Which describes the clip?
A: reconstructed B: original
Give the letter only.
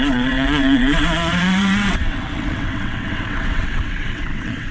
A